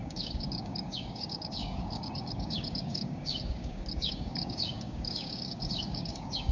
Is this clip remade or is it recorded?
remade